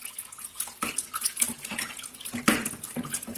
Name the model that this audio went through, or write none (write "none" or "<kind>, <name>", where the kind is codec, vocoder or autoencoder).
vocoder, Vocos